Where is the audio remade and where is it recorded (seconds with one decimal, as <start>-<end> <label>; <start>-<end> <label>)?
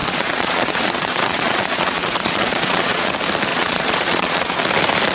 0.0-3.1 remade; 3.1-3.5 recorded; 3.5-4.6 remade; 4.6-5.1 recorded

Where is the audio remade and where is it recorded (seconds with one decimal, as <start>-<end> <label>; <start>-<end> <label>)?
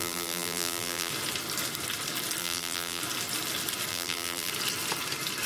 0.0-1.1 remade; 1.1-2.4 recorded; 2.4-3.0 remade; 3.0-3.9 recorded; 3.9-4.5 remade; 4.5-5.5 recorded